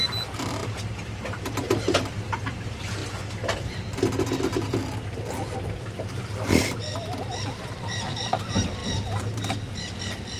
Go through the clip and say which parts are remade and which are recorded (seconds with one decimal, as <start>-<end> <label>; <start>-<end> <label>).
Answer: 0.0-8.8 remade; 8.8-10.0 recorded; 10.0-10.4 remade